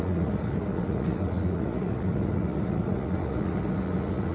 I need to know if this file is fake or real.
fake